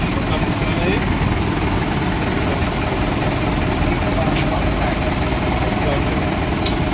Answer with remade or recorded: recorded